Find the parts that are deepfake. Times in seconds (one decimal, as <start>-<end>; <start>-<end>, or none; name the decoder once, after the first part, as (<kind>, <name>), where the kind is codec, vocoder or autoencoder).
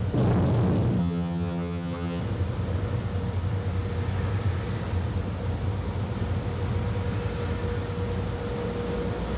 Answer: 1.0-2.2 (vocoder, HiFi-GAN)